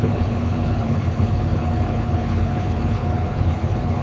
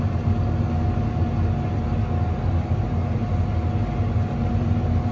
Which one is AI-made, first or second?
first